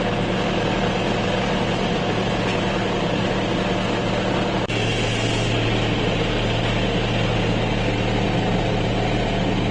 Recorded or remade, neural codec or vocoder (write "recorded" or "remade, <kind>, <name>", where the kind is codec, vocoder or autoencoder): recorded